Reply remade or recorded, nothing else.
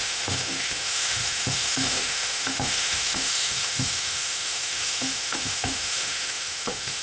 remade